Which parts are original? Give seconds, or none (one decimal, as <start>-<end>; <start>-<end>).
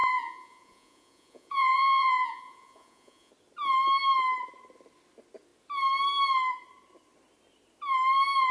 3.3-8.5